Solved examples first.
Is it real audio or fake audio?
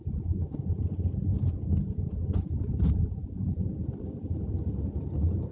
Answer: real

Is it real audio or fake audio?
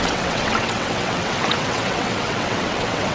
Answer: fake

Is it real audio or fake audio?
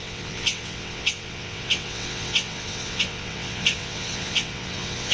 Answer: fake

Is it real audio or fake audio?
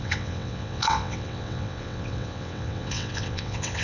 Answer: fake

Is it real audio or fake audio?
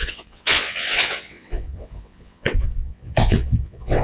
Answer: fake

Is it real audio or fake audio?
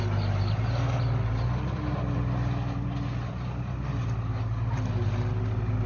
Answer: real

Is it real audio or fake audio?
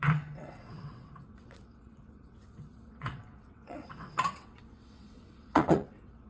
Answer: fake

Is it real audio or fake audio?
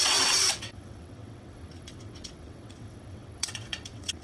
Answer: fake